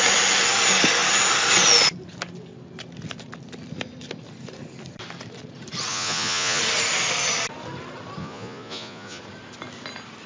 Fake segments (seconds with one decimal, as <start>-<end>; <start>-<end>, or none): 5.9-6.6; 8.2-9.2